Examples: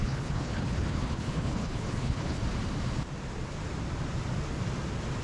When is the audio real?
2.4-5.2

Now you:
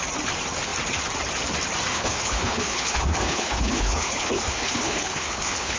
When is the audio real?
0.0-1.9